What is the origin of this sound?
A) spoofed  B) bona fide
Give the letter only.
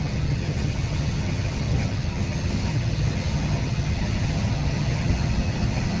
A